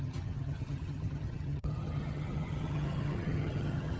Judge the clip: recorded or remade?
remade